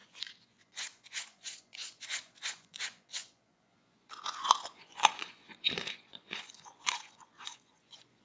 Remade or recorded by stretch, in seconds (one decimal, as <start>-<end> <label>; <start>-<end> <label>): 0.0-8.2 remade